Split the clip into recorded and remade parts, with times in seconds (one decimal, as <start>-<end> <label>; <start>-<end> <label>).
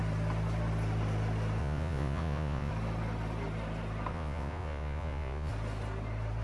0.0-1.6 recorded; 1.6-2.7 remade; 2.7-4.1 recorded; 4.1-5.5 remade; 5.5-6.4 recorded